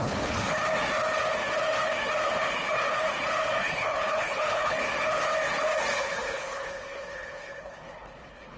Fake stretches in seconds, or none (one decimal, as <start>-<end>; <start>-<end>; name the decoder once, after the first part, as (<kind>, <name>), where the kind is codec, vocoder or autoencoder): 0.0-0.6 (codec, HILCodec); 3.6-4.8; 5.9-8.6